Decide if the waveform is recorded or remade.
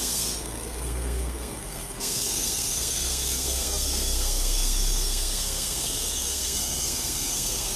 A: remade